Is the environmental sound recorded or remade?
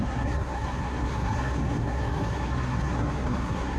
remade